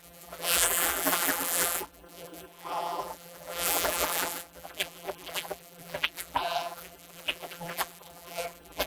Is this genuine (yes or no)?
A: no